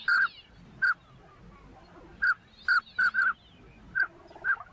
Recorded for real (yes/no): yes